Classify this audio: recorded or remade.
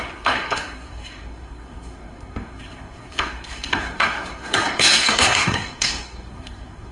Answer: remade